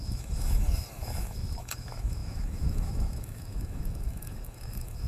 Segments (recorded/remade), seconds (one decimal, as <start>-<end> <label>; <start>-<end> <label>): 0.0-5.1 remade

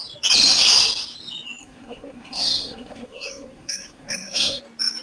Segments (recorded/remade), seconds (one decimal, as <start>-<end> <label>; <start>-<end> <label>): 0.0-1.6 recorded; 1.6-4.6 remade; 4.6-5.0 recorded